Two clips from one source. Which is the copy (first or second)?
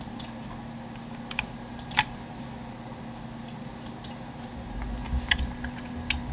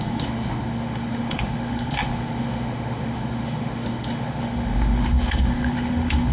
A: second